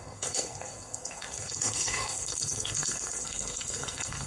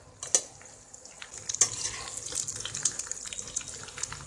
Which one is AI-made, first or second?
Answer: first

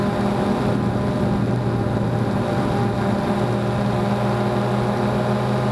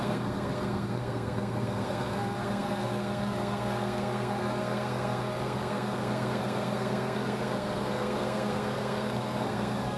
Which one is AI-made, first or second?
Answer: second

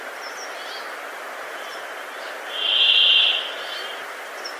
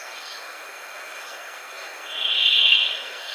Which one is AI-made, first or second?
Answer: second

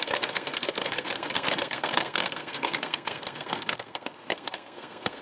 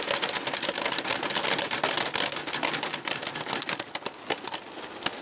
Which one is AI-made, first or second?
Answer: first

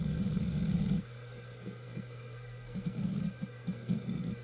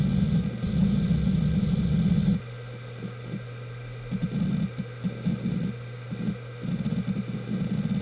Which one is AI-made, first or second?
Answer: first